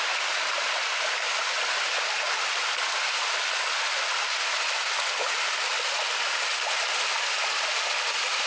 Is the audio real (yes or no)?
yes